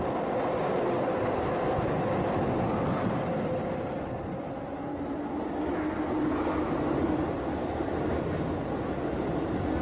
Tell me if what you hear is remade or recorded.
recorded